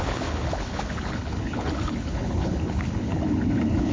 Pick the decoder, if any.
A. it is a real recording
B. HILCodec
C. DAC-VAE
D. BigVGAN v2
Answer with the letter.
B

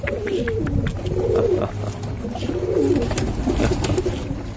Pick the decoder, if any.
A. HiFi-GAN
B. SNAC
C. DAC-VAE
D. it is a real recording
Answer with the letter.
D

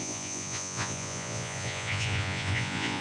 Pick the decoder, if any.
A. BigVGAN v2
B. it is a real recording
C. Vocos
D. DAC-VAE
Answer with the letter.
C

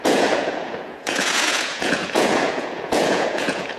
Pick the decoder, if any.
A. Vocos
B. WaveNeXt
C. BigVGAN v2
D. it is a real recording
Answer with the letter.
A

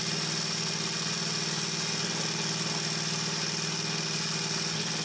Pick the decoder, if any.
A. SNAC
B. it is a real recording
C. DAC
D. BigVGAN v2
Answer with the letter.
B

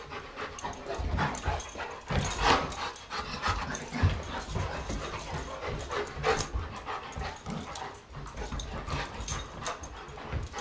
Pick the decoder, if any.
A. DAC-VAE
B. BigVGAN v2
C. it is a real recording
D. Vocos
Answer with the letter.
C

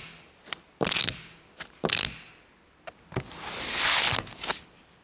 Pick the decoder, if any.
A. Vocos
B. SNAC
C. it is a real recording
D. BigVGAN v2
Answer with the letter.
C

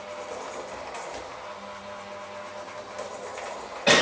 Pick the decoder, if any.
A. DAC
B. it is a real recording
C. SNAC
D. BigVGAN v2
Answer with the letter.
B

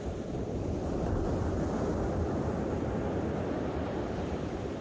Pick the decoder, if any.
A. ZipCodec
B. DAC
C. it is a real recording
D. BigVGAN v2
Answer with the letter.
C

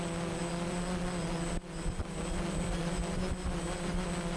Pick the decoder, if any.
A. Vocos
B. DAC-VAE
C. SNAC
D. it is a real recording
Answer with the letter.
D